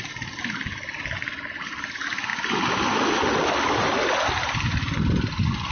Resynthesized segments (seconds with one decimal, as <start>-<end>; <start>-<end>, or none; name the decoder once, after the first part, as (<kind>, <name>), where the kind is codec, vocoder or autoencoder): none